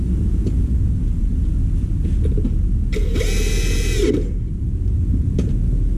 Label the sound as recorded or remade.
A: recorded